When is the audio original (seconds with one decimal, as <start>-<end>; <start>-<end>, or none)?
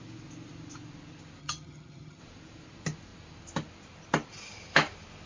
0.0-1.4; 2.2-5.3